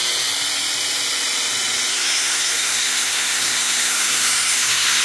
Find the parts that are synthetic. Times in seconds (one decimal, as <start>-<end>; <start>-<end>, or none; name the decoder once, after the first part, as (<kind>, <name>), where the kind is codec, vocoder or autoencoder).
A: 1.9-5.0 (codec, SNAC)

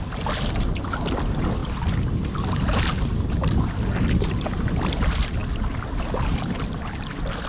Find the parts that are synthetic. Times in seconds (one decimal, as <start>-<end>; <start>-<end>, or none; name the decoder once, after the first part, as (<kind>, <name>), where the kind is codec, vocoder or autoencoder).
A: none

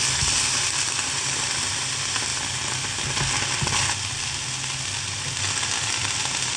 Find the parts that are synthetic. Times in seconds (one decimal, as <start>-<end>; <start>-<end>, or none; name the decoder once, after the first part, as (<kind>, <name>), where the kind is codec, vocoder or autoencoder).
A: none

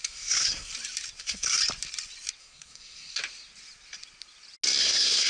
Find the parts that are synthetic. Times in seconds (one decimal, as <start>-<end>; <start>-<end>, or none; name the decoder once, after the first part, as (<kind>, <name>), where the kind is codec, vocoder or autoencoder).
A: 0.0-0.7 (codec, SNAC); 1.2-1.6; 2.4-3.2; 4.8-5.3

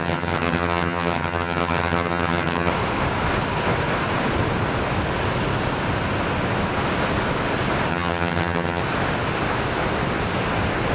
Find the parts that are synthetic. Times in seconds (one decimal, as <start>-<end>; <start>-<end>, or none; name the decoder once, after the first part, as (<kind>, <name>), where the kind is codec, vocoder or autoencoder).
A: 0.0-2.7 (vocoder, HiFi-GAN); 7.9-8.8

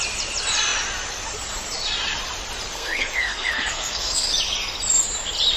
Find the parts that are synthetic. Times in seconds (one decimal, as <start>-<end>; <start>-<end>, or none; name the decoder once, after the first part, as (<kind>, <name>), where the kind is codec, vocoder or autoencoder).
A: 2.7-4.3 (codec, SNAC)